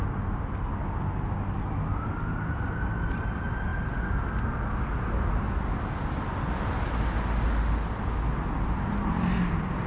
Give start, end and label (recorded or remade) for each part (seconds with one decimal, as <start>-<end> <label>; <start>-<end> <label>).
0.0-9.9 recorded